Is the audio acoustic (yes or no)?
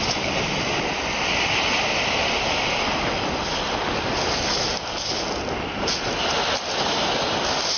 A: yes